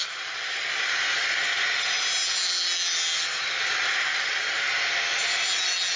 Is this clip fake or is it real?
real